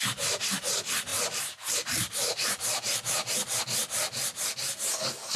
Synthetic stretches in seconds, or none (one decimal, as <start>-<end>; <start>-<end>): 1.1-3.6